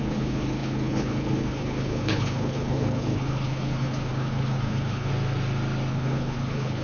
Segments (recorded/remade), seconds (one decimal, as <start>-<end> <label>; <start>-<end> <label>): 0.0-5.1 remade; 5.1-5.9 recorded; 5.9-6.8 remade